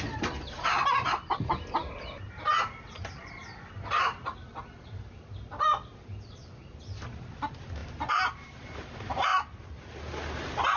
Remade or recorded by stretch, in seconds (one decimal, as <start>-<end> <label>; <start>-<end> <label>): 0.0-10.8 recorded